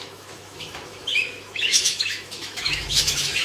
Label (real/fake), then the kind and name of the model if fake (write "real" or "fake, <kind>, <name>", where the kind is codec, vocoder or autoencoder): fake, autoencoder, DAC-VAE